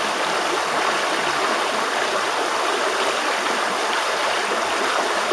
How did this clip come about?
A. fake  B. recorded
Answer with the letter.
B